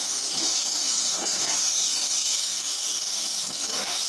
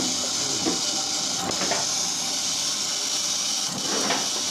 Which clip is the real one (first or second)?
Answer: second